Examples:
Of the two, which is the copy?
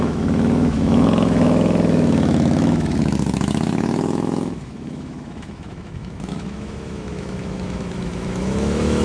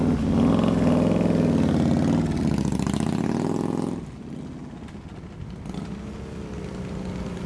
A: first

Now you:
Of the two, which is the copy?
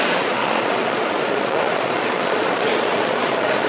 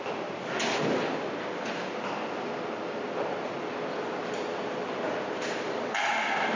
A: first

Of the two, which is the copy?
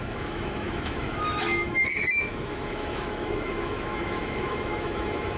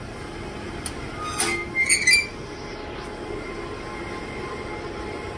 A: first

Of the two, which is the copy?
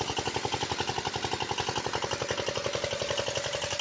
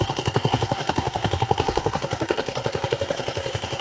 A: second